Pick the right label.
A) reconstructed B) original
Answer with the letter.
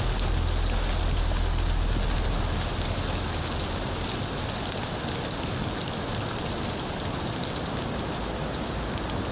B